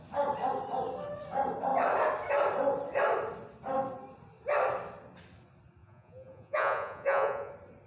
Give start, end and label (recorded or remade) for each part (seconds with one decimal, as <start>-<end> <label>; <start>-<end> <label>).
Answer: 0.0-5.8 recorded; 5.8-7.5 remade; 7.5-7.9 recorded